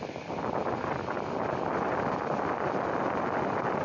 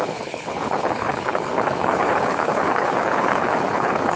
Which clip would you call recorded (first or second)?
first